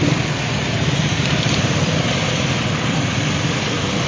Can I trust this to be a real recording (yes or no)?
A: no